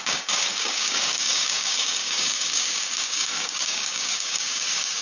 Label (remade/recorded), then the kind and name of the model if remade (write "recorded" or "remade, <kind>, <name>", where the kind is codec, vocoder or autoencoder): remade, codec, DAC